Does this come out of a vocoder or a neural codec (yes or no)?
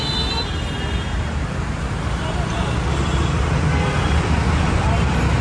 no